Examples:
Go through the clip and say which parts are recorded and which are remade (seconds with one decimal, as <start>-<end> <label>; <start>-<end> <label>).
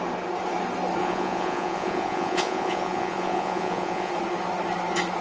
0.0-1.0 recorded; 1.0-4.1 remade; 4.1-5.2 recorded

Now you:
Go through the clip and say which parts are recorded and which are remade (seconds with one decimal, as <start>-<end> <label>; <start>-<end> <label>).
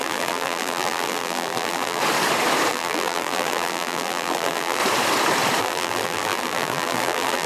0.0-2.0 remade; 2.0-2.7 recorded; 2.7-4.8 remade; 4.8-5.6 recorded; 5.6-7.5 remade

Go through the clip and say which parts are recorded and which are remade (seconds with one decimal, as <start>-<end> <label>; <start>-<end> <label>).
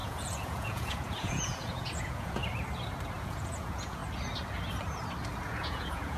0.0-2.4 remade; 2.4-3.2 recorded; 3.2-4.0 remade; 4.0-5.4 recorded; 5.4-6.2 remade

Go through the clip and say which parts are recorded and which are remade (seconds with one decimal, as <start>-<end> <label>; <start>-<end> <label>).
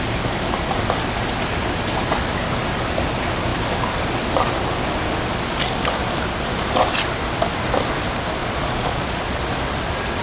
0.0-8.4 recorded; 8.4-9.4 remade; 9.4-10.2 recorded